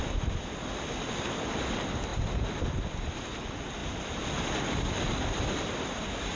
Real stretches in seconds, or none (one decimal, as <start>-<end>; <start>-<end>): 0.0-6.4